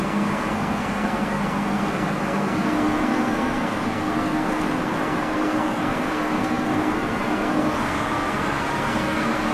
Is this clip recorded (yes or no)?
no